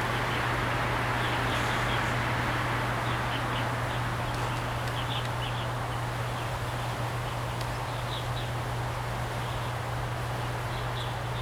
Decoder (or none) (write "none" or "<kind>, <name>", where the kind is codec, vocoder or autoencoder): none